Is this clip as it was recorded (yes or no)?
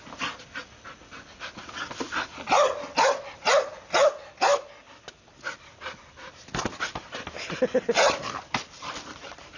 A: yes